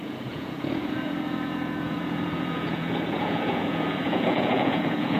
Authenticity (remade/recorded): remade